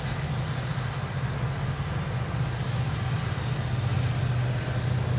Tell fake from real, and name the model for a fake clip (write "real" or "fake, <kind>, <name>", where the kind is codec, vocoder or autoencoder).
real